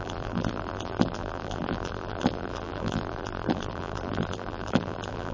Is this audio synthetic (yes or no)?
yes